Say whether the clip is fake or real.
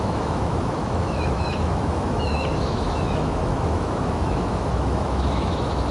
fake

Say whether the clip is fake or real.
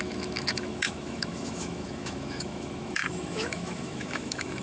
fake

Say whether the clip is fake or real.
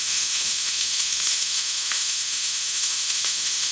fake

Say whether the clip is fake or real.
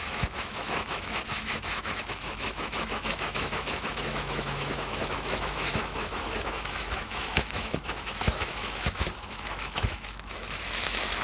fake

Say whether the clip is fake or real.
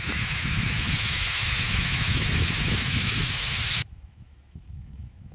fake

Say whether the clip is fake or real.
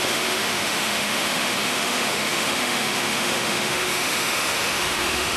fake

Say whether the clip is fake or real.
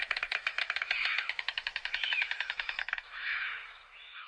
fake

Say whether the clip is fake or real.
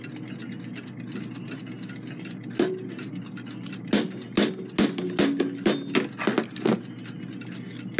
real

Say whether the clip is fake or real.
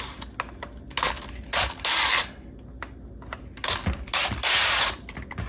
real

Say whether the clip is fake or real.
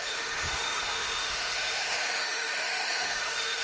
fake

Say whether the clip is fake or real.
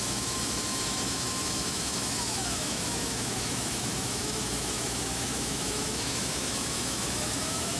fake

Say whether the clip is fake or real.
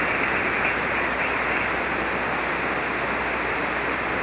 real